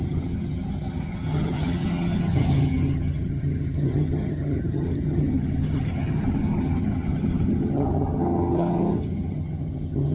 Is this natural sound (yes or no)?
no